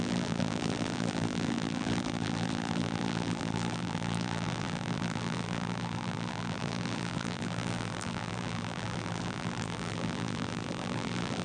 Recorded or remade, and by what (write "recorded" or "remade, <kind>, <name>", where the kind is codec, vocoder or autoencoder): remade, vocoder, BigVGAN v2